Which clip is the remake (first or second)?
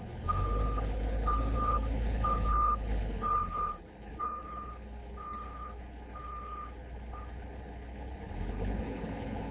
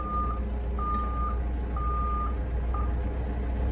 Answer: first